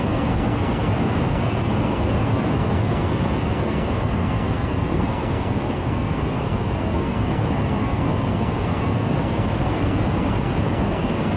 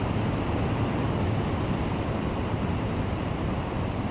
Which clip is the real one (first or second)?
second